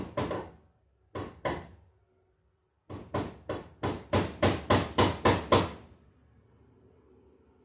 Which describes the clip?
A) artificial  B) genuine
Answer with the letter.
B